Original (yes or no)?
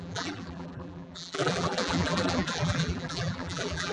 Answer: no